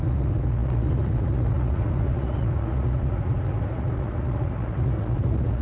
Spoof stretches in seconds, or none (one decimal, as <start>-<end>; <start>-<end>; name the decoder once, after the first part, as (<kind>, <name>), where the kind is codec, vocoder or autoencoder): 0.0-5.6 (vocoder, Vocos)